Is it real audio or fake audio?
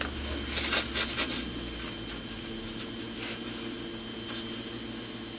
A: real